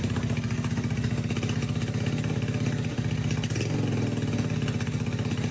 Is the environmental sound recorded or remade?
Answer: recorded